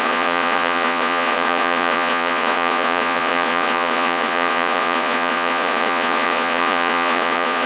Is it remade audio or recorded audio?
remade